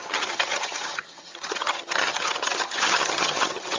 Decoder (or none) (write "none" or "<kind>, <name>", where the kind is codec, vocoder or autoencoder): vocoder, HiFi-GAN